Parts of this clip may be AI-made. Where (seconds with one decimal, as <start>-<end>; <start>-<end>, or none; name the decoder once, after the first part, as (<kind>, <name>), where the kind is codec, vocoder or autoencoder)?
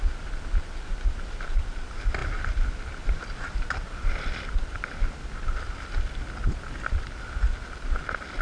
2.2-5.3 (vocoder, BigVGAN v2)